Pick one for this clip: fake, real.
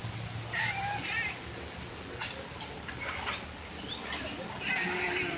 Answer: real